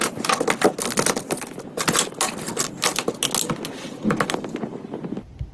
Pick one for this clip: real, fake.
real